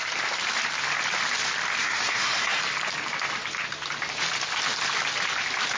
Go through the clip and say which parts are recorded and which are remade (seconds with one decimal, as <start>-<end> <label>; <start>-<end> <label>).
0.0-1.8 recorded; 1.8-2.6 remade; 2.6-5.8 recorded